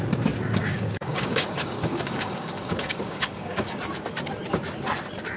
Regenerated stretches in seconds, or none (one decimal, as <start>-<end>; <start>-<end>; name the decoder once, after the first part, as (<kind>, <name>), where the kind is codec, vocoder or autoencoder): 0.6-3.8 (codec, DAC)